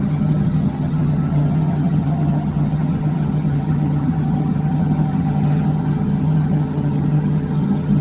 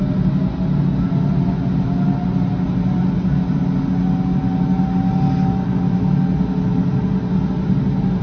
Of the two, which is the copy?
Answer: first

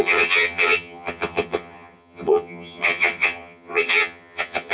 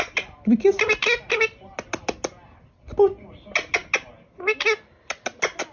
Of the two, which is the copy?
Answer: first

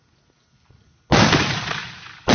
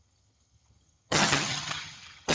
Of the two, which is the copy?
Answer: second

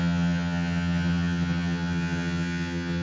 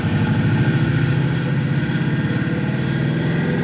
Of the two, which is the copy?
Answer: first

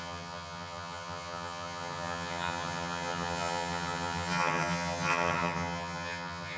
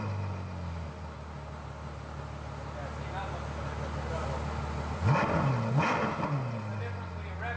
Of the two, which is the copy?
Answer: first